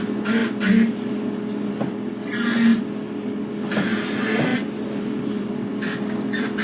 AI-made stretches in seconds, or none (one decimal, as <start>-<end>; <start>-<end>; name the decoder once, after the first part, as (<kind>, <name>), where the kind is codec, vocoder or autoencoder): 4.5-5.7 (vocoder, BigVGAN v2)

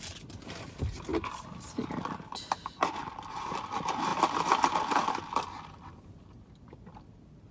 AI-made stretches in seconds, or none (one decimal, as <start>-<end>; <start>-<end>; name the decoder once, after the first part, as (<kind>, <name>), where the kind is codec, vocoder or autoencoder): none

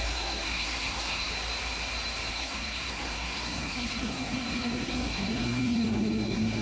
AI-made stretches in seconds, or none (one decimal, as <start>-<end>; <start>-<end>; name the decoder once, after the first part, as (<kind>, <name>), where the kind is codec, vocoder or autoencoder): 0.0-1.3 (codec, SNAC); 2.3-6.6